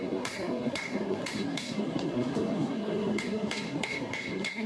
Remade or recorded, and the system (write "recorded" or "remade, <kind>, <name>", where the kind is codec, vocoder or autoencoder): remade, codec, SNAC